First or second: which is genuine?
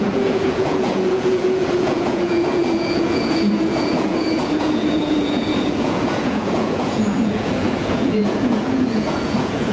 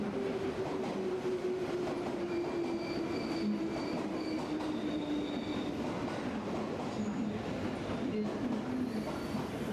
second